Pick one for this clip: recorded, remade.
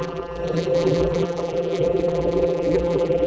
remade